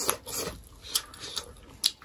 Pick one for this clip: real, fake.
real